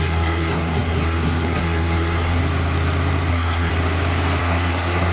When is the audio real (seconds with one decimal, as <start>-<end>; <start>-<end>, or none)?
2.4-3.3; 3.7-4.4